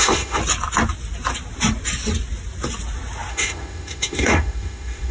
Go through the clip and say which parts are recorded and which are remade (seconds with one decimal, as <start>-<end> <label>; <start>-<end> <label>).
0.0-0.4 remade; 0.4-3.3 recorded; 3.3-5.1 remade